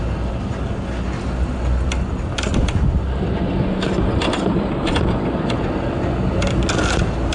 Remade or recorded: recorded